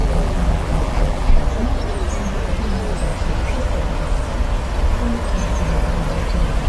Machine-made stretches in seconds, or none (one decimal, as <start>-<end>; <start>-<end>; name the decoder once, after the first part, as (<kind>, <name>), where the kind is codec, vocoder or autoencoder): 0.0-1.3 (vocoder, BigVGAN v2)